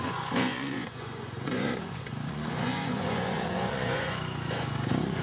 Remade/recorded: remade